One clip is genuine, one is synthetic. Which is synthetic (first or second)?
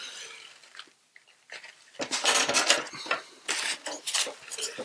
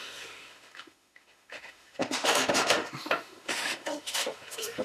second